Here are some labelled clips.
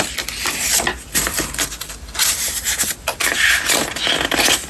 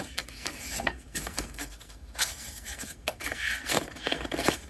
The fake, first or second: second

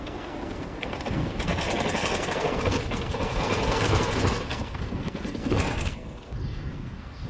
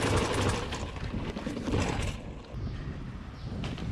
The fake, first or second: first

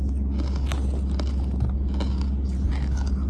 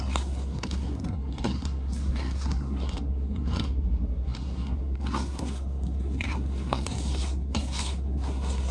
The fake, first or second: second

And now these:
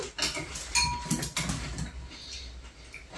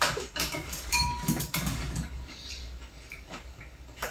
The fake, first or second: second